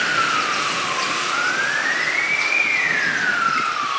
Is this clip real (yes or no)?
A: no